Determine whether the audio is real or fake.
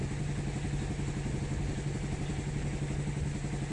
real